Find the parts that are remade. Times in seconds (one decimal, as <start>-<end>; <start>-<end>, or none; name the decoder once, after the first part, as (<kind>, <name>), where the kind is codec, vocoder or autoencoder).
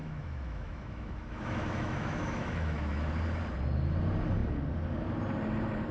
0.0-3.1 (autoencoder, DAC-VAE)